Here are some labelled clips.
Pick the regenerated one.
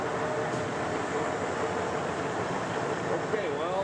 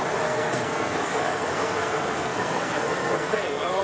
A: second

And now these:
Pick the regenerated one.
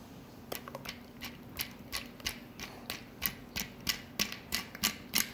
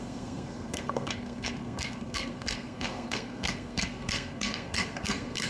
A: second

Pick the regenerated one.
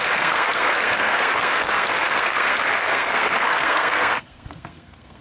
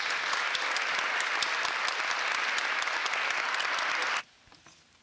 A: first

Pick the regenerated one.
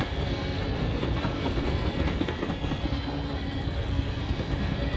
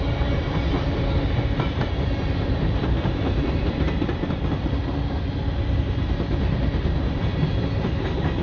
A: first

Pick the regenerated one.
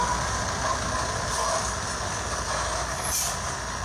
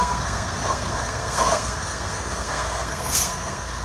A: second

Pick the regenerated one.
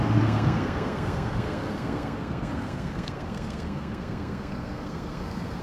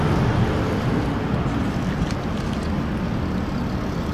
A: first